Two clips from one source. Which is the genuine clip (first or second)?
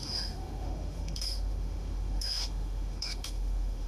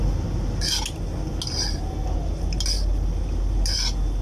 second